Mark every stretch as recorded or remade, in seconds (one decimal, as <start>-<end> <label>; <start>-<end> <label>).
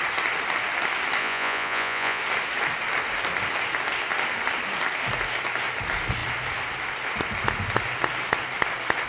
0.0-1.2 recorded; 1.2-2.2 remade; 2.2-9.1 recorded